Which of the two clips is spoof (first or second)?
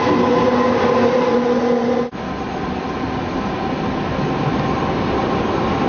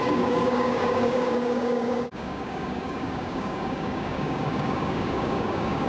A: second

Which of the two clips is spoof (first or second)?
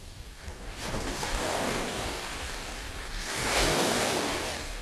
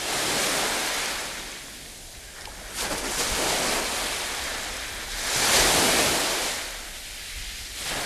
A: first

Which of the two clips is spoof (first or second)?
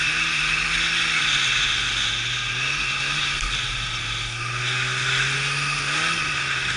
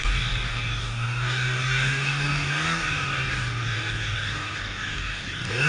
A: second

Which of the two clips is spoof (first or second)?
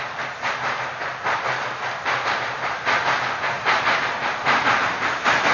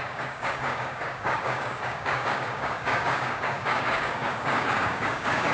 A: second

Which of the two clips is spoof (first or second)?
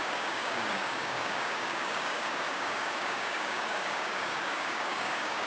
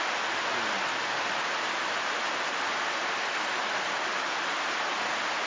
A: first